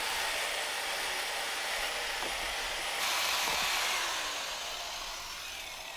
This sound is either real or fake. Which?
real